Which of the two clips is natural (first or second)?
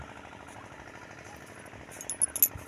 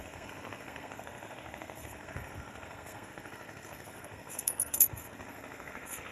first